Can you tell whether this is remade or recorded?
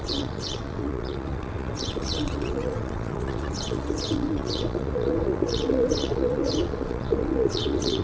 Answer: remade